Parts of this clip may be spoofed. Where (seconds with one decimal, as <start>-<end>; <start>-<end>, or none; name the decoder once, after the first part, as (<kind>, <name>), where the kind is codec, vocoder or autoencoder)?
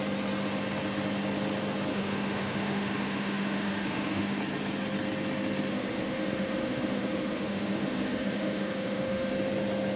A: 1.9-4.4 (autoencoder, DAC-VAE); 5.7-9.3